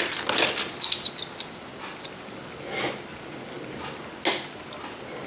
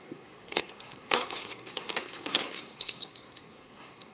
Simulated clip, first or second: second